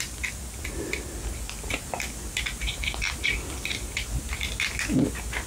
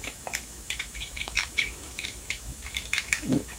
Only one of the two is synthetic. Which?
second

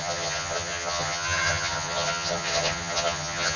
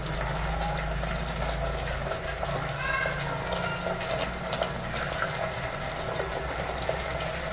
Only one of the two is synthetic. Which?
first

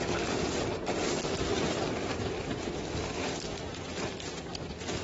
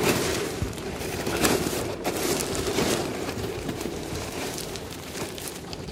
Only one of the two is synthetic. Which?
second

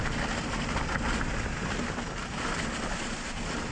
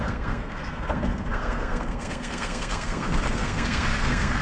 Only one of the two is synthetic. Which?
second